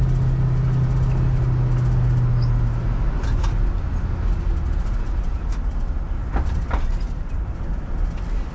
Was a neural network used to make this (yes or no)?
no